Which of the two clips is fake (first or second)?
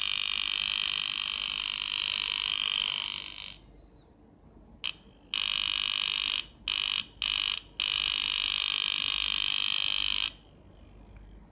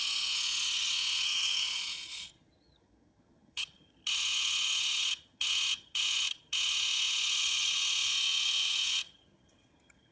second